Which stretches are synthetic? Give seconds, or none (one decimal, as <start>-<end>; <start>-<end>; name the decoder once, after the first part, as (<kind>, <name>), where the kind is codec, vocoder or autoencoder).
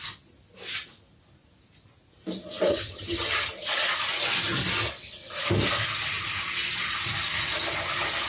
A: 2.7-3.5 (vocoder, HiFi-GAN)